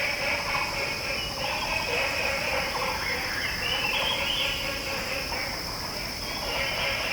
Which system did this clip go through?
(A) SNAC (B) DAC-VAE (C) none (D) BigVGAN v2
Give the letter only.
C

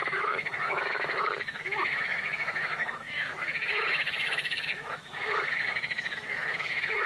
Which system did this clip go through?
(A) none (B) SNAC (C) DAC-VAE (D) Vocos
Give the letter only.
C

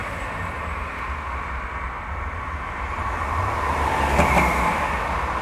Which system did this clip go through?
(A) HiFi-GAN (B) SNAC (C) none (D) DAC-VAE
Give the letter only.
C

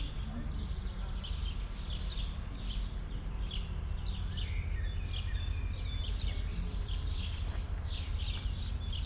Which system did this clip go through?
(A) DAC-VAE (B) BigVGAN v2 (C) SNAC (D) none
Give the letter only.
D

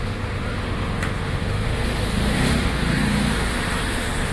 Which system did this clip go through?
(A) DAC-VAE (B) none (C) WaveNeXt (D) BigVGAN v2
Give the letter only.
A